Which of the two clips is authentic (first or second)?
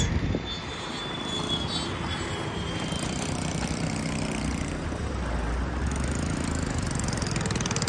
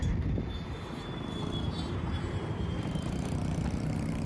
first